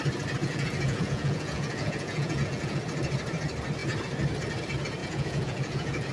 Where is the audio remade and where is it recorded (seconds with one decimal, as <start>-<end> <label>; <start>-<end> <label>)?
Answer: 0.0-0.4 recorded; 0.4-2.8 remade; 2.8-5.0 recorded; 5.0-6.1 remade